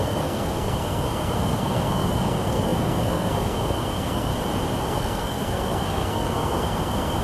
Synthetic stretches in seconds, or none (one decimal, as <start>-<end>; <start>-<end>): 0.0-4.3; 4.8-7.2